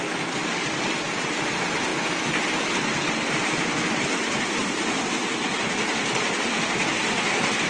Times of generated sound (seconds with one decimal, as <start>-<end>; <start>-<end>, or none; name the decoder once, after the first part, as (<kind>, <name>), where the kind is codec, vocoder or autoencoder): 0.4-1.4 (vocoder, BigVGAN v2); 4.6-6.6